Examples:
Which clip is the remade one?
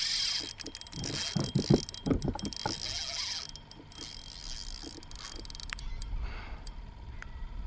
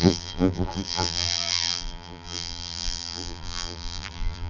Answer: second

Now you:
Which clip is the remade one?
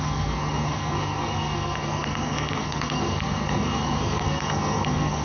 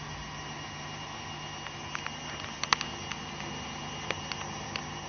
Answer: first